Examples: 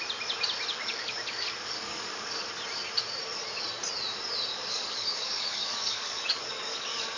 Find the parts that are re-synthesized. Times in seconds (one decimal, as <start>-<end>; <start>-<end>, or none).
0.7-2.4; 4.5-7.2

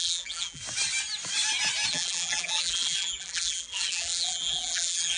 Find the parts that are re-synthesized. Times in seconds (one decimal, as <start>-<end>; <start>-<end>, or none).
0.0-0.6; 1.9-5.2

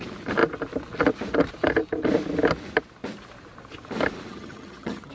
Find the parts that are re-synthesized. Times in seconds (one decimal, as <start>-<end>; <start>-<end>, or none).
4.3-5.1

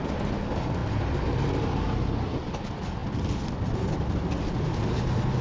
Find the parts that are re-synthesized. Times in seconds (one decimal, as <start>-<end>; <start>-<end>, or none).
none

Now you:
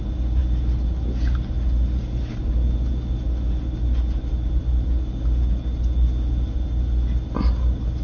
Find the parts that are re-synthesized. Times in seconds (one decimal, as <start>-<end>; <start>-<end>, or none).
none

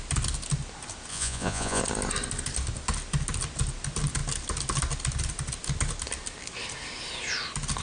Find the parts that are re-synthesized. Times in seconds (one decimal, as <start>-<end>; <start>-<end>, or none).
1.1-1.8